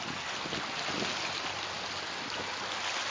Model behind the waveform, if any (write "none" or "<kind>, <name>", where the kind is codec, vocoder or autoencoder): none